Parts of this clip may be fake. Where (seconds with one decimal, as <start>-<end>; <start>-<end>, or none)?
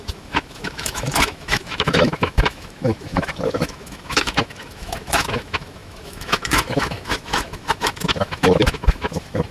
0.0-9.5